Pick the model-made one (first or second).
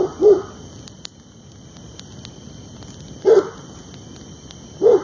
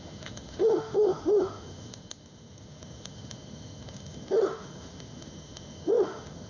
second